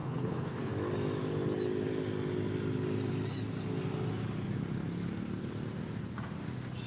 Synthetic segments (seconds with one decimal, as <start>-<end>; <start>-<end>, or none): 0.0-0.7